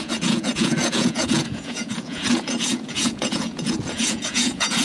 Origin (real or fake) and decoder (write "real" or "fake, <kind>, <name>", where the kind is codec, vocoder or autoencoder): fake, vocoder, Vocos